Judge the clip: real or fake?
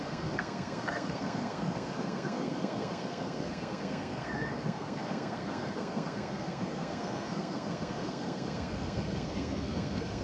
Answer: fake